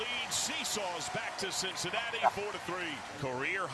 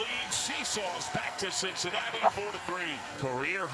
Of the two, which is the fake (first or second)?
second